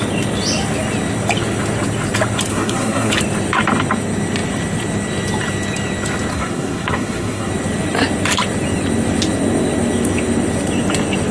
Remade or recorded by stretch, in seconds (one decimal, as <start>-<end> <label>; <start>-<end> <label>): 0.0-2.5 recorded; 2.5-3.1 remade; 3.1-6.3 recorded; 6.3-7.5 remade; 7.5-11.3 recorded

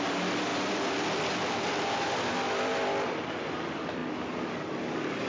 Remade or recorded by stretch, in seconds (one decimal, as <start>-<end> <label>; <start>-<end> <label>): 0.0-4.0 remade; 4.0-4.7 recorded; 4.7-5.3 remade

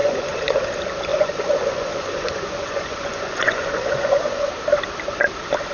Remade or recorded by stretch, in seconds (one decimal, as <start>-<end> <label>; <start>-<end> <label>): 0.0-0.6 remade; 0.6-1.1 recorded; 1.1-4.5 remade; 4.5-5.7 recorded

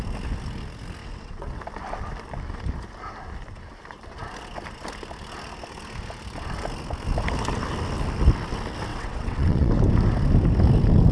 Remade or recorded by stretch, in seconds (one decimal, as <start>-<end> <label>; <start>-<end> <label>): 0.0-1.0 recorded; 1.0-1.6 remade; 1.6-8.9 recorded; 8.9-9.7 remade; 9.7-11.1 recorded